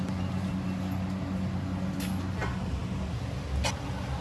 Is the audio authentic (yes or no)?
yes